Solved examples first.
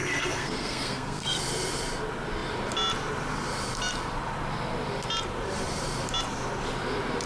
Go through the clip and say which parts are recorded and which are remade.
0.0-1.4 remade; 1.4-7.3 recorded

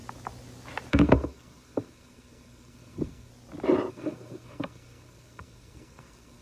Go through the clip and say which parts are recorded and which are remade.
0.0-0.9 recorded; 0.9-3.3 remade; 3.3-3.9 recorded; 3.9-6.4 remade

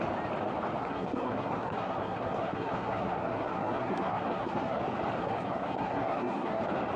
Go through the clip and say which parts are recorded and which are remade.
0.0-0.8 recorded; 0.8-4.8 remade; 4.8-5.2 recorded; 5.2-6.6 remade; 6.6-7.0 recorded